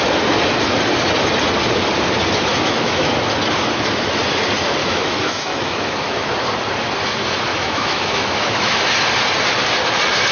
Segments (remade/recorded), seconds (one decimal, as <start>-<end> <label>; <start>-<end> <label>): 0.0-2.5 recorded; 2.5-3.1 remade; 3.1-4.8 recorded; 4.8-6.3 remade; 6.3-7.5 recorded; 7.5-8.8 remade; 8.8-10.3 recorded